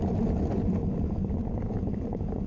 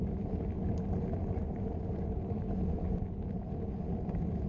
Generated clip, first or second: first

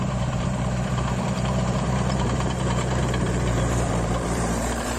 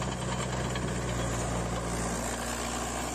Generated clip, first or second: first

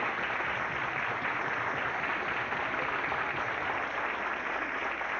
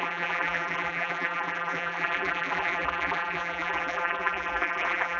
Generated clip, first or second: second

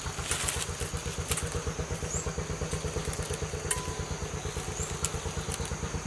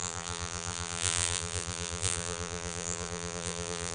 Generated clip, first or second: second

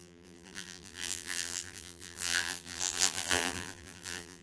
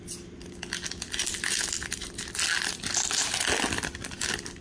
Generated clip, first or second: first